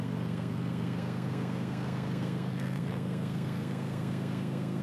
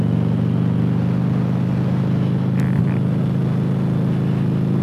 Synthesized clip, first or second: first